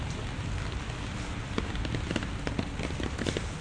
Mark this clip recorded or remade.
recorded